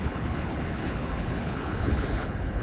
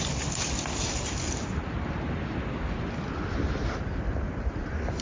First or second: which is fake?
first